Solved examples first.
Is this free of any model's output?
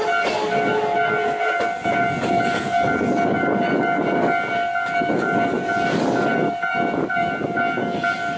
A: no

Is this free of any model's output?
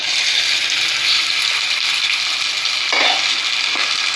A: yes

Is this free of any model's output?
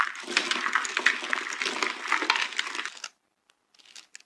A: yes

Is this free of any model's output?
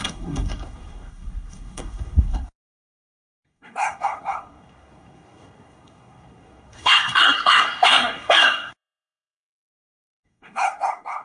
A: no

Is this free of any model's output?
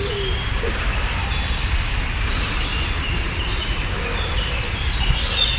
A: yes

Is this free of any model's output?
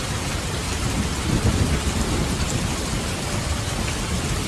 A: yes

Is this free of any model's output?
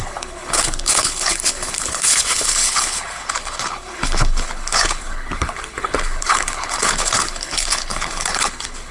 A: no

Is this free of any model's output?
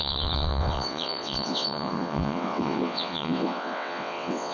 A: no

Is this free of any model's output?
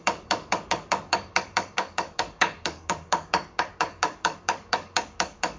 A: no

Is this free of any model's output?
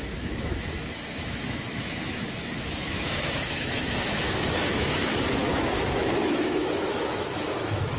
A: no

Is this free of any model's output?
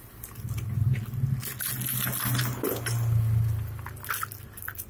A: yes